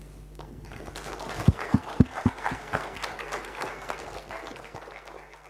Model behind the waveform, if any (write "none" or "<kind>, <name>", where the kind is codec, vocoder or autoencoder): codec, SNAC